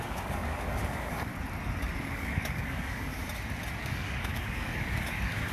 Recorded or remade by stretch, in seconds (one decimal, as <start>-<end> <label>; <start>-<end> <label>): 0.0-1.3 remade; 1.3-2.1 recorded; 2.1-3.2 remade; 3.2-3.8 recorded; 3.8-5.5 remade